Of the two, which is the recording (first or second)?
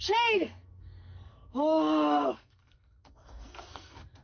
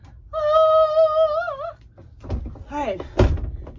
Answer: second